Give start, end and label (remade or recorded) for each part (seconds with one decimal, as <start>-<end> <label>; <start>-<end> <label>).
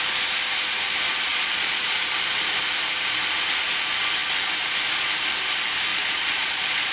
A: 0.0-1.3 recorded; 1.3-2.1 remade; 2.1-5.9 recorded; 5.9-6.9 remade